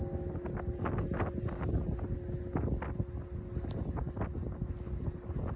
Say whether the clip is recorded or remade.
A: recorded